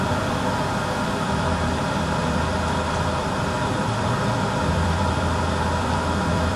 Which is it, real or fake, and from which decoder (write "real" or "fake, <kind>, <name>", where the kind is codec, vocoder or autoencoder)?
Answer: fake, vocoder, BigVGAN v2